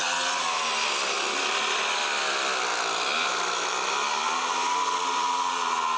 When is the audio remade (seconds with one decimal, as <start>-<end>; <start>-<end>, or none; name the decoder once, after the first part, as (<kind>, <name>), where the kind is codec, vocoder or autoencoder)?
0.0-1.6 (vocoder, BigVGAN v2); 4.2-5.5